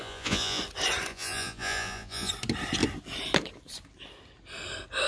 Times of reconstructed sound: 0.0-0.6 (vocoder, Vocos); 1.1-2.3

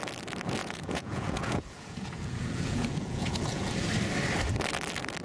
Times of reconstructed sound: 0.6-3.7 (vocoder, Vocos)

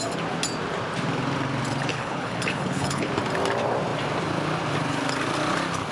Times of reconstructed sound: 1.9-3.1 (codec, HILCodec)